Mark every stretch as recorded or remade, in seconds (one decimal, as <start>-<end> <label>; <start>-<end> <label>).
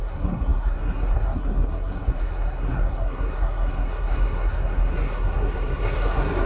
0.0-6.5 remade